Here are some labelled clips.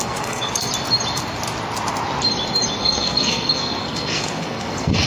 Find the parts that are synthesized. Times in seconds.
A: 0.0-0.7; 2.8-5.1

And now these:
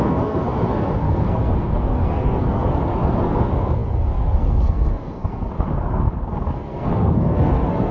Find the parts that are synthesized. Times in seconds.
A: 0.0-7.9